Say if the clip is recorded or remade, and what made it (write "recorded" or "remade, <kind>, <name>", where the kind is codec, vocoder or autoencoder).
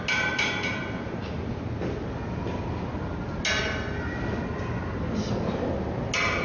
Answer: recorded